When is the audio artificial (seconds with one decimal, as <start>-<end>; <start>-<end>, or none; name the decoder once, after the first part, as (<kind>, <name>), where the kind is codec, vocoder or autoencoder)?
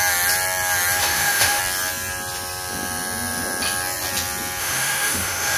1.0-1.6 (autoencoder, DAC-VAE); 4.6-5.6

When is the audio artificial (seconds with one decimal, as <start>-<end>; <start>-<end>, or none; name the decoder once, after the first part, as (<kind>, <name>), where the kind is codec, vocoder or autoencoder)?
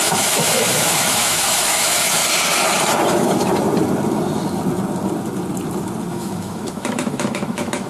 0.0-2.2 (autoencoder, DAC-VAE); 3.1-3.5; 6.1-7.9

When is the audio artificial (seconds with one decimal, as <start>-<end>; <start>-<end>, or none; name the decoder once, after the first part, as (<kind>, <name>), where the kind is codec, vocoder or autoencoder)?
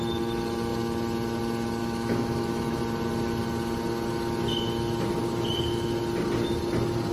1.8-2.8 (autoencoder, DAC-VAE)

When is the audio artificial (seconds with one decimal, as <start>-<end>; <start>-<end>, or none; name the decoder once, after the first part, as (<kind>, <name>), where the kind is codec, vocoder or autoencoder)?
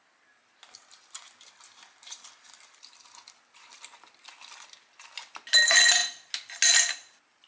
none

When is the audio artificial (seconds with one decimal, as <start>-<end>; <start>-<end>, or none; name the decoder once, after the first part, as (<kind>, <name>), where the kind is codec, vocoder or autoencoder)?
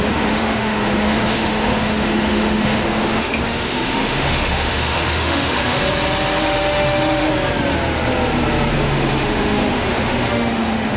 0.0-5.8 (autoencoder, DAC-VAE); 6.4-7.3; 8.7-11.0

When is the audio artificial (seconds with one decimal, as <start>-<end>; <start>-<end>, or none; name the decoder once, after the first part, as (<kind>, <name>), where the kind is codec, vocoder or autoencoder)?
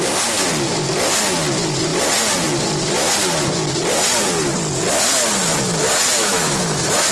6.2-7.1 (autoencoder, DAC-VAE)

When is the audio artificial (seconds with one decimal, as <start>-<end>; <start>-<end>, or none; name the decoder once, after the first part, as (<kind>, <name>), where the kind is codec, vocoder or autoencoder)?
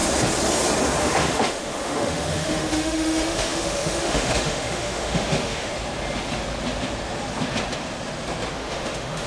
1.0-5.7 (autoencoder, DAC-VAE); 8.5-9.3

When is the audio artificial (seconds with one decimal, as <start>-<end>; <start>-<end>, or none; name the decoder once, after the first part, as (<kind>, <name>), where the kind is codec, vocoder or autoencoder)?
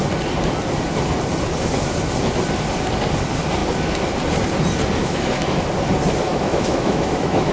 5.0-5.6 (autoencoder, DAC-VAE); 6.3-7.5